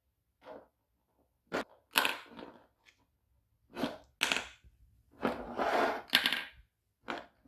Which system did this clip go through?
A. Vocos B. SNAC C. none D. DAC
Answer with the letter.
C